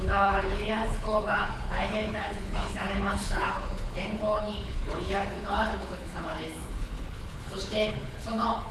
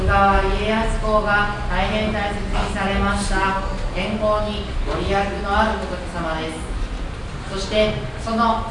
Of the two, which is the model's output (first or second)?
first